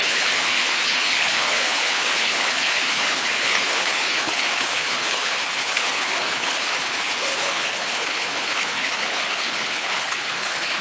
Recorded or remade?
remade